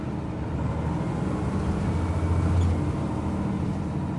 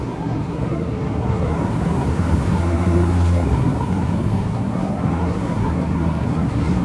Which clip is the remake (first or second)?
second